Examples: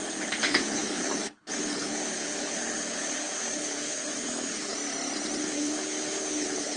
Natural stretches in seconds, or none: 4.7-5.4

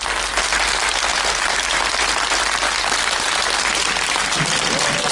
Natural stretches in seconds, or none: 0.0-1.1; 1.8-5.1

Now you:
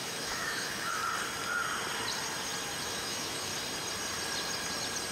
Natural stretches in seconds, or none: 1.0-2.8; 3.5-5.1

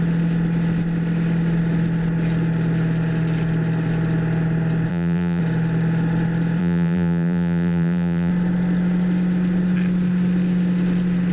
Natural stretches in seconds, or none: 0.0-4.9; 5.4-6.6; 8.3-11.3